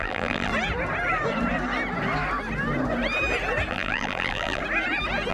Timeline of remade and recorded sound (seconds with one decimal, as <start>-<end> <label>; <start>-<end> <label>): 0.0-0.5 remade; 0.5-3.7 recorded; 3.7-4.6 remade; 4.6-5.3 recorded